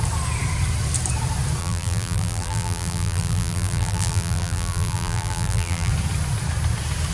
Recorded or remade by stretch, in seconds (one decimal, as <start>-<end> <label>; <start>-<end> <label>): 0.0-1.6 recorded; 1.6-5.9 remade; 5.9-7.1 recorded